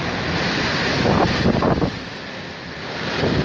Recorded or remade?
recorded